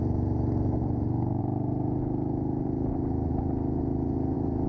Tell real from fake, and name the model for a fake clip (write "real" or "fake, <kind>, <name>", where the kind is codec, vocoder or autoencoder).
real